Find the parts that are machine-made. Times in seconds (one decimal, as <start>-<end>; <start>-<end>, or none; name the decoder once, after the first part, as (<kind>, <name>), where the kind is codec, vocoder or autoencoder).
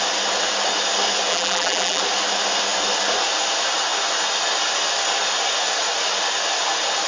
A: 1.3-2.0 (vocoder, BigVGAN v2)